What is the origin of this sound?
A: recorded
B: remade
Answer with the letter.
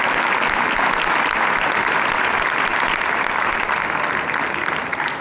A